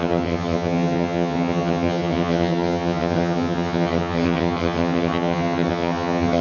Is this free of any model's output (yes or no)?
no